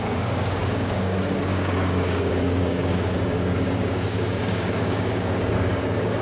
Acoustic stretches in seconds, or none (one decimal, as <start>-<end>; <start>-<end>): none